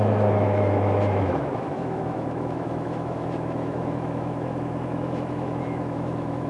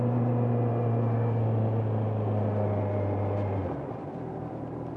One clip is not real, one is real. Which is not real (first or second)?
first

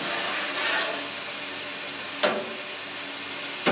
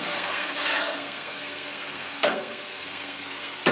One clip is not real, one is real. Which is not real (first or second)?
second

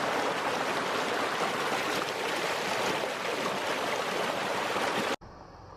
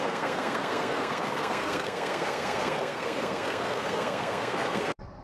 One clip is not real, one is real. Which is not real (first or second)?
second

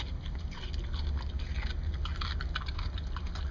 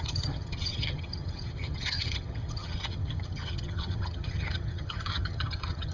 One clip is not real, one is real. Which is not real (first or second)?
second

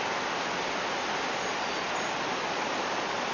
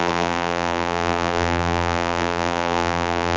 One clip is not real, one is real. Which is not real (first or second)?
second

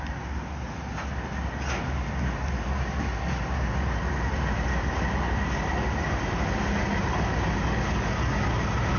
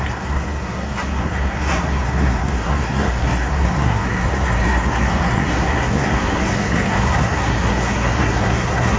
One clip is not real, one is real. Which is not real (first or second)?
second